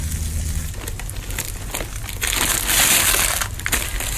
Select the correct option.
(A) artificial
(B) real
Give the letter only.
B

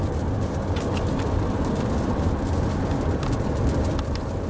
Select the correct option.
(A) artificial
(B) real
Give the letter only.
A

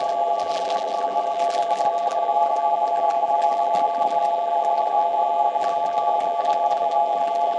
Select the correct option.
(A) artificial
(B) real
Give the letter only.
A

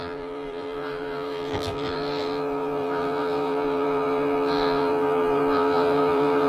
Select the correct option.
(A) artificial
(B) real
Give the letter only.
A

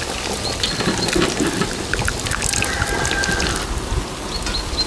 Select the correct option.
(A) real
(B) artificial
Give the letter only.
A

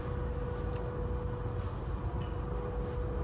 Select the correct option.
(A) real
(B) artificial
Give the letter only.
A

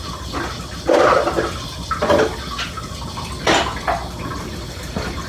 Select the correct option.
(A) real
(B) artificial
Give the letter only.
A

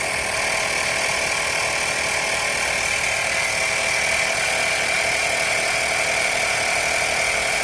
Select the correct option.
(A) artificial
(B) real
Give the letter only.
B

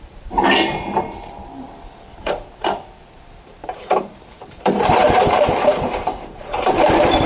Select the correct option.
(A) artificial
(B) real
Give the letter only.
A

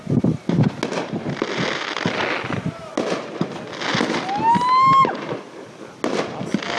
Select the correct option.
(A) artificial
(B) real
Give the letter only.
B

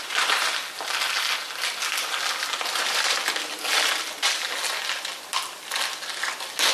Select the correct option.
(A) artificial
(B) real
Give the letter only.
B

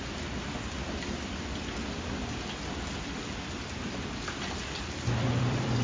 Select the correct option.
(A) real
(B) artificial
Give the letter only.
B